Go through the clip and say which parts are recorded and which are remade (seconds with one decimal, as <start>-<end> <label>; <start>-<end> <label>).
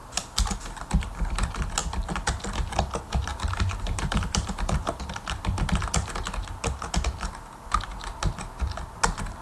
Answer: 0.0-3.3 recorded; 3.3-5.0 remade; 5.0-9.4 recorded